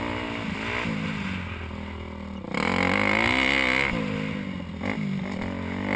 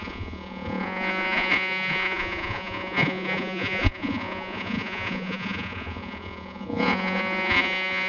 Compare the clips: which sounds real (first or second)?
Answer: first